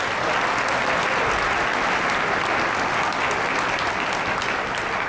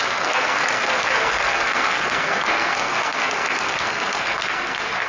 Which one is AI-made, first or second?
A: second